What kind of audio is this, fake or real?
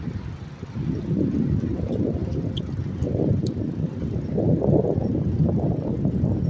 real